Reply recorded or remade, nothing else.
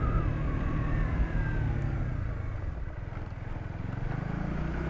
recorded